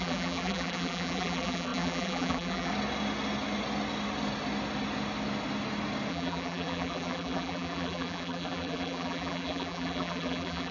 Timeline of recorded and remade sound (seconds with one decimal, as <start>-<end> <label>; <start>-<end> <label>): 0.0-2.7 remade; 2.7-6.1 recorded; 6.1-10.7 remade